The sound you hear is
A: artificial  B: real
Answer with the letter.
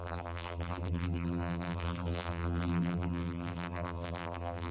A